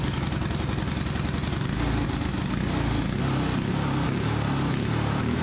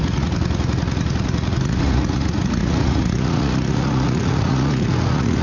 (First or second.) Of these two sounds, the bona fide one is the first